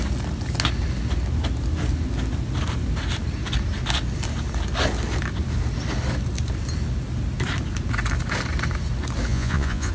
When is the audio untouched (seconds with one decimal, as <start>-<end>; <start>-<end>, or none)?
0.0-9.3